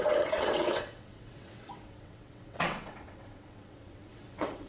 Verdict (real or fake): fake